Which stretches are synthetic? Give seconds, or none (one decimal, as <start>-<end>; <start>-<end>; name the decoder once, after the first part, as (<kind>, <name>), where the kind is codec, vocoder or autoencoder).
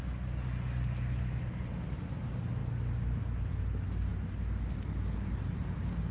none